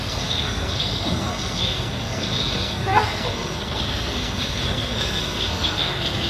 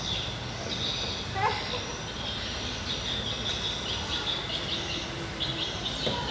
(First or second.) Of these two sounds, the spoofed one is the first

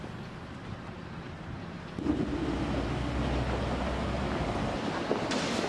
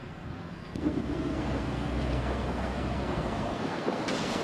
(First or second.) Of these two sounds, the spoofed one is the second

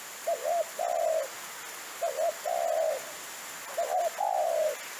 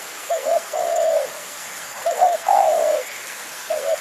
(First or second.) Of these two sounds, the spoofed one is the second